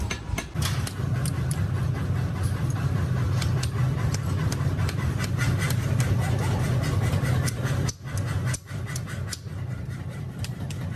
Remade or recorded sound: recorded